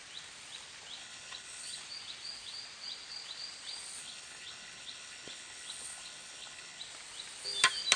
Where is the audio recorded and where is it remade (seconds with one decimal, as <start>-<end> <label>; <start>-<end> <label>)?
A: 0.0-1.0 recorded; 1.0-1.8 remade; 1.8-4.0 recorded; 4.0-6.8 remade; 6.8-8.0 recorded